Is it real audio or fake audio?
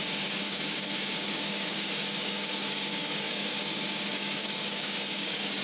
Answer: fake